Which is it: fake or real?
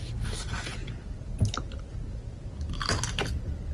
real